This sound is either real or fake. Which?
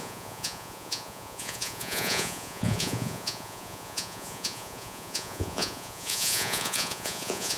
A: fake